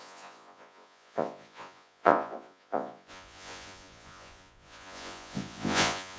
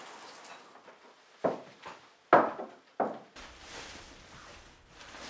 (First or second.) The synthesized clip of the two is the first